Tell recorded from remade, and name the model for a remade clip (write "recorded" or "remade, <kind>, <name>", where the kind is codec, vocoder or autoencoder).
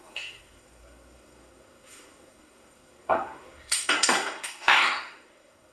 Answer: remade, codec, SNAC